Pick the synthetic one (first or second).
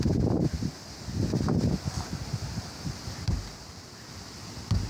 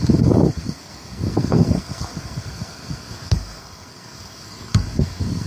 second